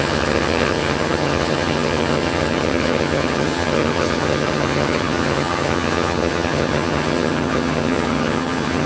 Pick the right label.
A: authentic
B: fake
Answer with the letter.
B